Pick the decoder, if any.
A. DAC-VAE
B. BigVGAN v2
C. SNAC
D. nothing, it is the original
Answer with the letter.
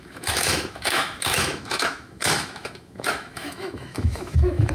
A